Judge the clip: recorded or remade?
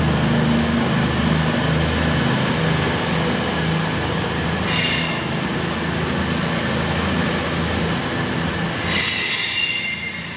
recorded